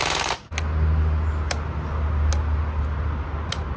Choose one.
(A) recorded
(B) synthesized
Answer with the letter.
A